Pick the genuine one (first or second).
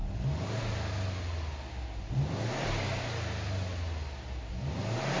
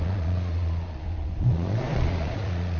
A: first